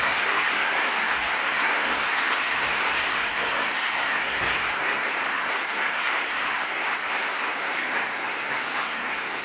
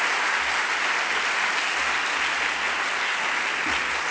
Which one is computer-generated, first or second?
first